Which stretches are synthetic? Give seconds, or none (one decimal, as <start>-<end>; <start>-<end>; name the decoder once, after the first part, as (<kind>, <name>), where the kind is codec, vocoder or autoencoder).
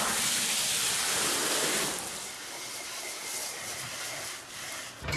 none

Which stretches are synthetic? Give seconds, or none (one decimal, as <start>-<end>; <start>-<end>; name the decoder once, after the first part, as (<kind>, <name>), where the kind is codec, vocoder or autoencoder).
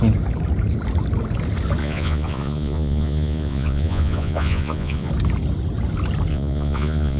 1.8-5.1 (vocoder, Vocos); 6.3-7.2